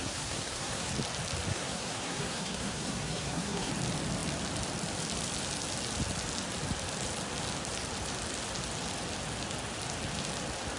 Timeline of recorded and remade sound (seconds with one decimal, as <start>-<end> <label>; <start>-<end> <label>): 0.0-0.9 remade; 0.9-1.5 recorded; 1.5-3.7 remade; 3.7-10.8 recorded